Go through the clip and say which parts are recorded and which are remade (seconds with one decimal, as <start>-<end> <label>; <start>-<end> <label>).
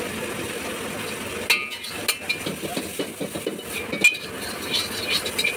0.0-5.6 recorded